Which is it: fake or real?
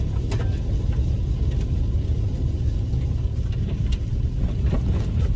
real